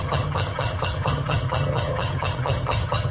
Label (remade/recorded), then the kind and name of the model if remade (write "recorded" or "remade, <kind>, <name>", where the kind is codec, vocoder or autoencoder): remade, vocoder, HiFi-GAN